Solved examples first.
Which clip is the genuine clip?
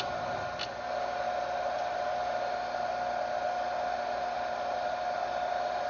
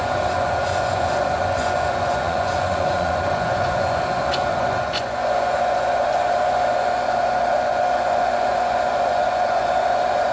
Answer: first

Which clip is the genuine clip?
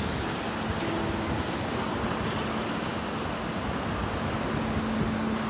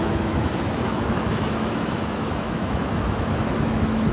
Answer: first